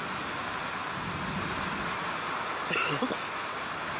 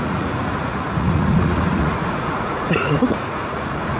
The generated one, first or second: second